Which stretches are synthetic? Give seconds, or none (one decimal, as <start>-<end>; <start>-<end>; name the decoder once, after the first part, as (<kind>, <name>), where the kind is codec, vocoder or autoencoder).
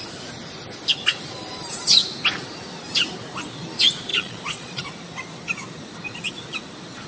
4.1-4.8 (vocoder, Vocos)